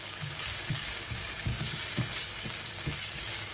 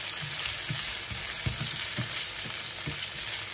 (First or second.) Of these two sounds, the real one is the second